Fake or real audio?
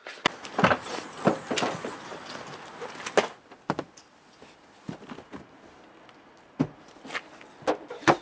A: real